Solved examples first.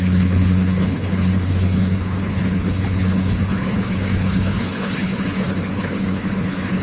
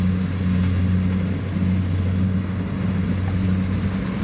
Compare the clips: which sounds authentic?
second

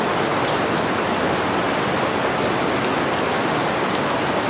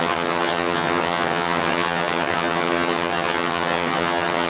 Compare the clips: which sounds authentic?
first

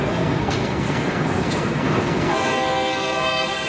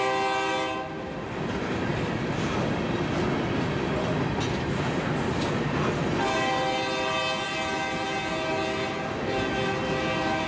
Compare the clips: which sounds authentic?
second